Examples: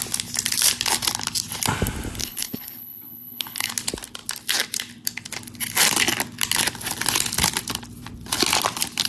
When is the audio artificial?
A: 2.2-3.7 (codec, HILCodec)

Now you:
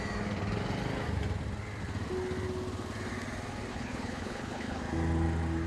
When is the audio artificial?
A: 3.7-4.8 (codec, HILCodec)